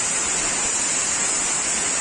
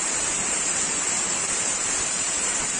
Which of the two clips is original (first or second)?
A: first